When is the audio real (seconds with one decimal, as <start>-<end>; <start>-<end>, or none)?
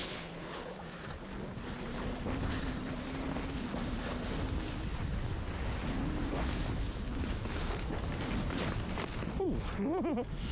0.7-10.5